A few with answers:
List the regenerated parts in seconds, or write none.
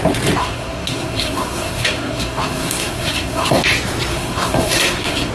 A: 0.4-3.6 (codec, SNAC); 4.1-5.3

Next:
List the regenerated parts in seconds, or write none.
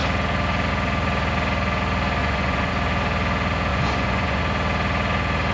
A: 2.2-2.7 (vocoder, Vocos); 3.7-4.4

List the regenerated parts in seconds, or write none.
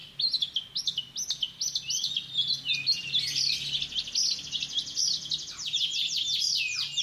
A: none